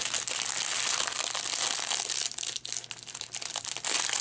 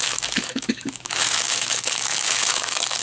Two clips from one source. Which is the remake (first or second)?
second